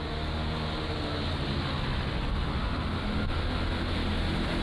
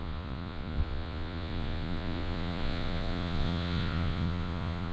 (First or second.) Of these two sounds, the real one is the first